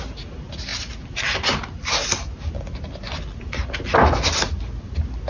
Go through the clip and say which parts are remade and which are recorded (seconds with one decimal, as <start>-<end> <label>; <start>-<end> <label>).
0.0-5.3 recorded